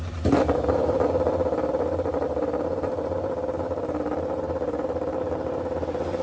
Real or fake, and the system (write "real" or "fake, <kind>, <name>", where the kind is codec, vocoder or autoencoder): fake, vocoder, BigVGAN v2